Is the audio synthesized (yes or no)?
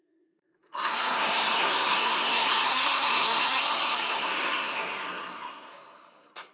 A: yes